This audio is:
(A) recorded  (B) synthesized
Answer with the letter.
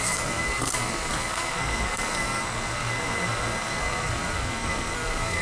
B